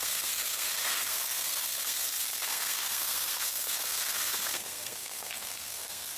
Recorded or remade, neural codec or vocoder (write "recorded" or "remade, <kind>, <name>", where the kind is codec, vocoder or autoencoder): remade, codec, SNAC